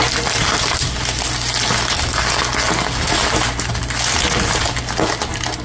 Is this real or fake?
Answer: real